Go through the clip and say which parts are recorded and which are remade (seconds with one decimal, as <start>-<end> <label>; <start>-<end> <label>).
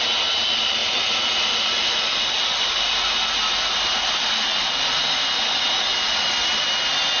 0.0-7.2 recorded